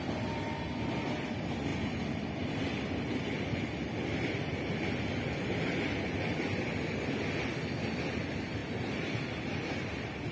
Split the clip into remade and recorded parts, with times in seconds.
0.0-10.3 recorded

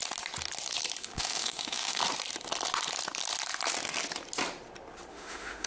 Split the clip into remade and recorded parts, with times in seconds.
0.0-1.0 recorded; 1.0-2.0 remade; 2.0-5.1 recorded; 5.1-5.7 remade

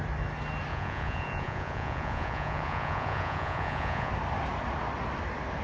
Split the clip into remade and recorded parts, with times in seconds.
0.0-0.7 recorded; 0.7-4.1 remade; 4.1-5.6 recorded

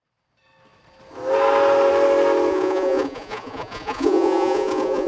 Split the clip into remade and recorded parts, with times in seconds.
0.0-2.5 recorded; 2.5-5.1 remade